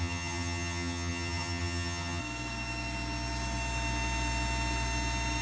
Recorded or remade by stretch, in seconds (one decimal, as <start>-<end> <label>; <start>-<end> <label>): 0.0-2.2 remade; 2.2-5.4 recorded